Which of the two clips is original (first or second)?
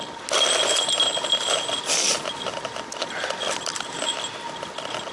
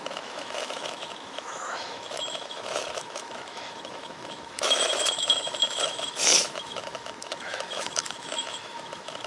first